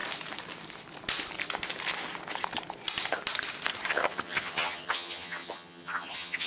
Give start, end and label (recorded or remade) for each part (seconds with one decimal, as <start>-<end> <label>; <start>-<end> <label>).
0.0-3.9 recorded; 3.9-6.5 remade